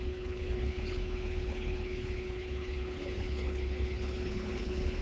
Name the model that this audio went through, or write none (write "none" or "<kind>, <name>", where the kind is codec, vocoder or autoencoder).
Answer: codec, HILCodec